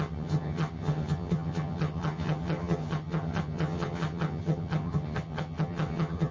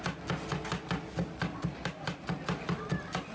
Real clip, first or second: second